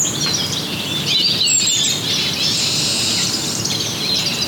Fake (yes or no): no